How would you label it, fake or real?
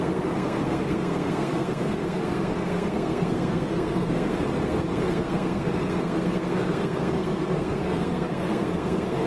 fake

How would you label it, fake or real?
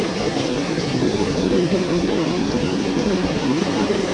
fake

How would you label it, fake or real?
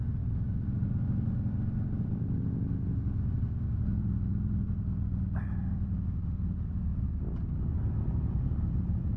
real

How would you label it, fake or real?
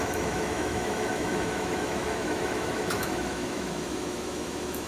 fake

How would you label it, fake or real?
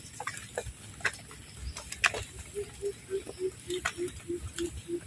real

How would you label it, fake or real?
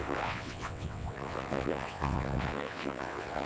fake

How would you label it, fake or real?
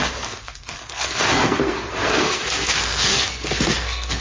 fake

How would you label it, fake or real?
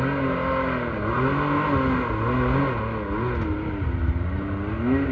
real